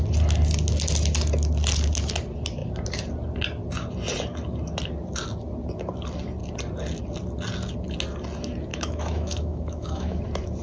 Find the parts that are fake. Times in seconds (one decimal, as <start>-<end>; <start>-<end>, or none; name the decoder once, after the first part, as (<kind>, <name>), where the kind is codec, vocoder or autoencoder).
8.7-10.2 (autoencoder, DAC-VAE)